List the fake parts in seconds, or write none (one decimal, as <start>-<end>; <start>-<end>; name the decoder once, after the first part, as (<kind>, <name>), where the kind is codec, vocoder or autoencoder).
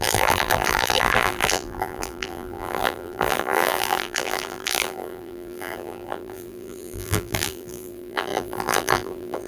0.0-9.5 (vocoder, BigVGAN v2)